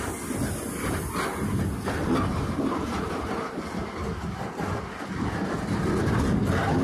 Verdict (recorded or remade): recorded